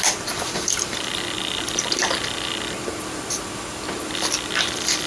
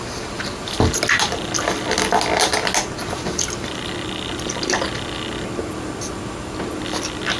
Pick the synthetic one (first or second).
first